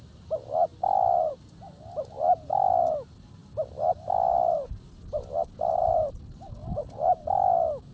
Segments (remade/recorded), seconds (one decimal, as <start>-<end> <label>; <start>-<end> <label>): 0.0-7.9 recorded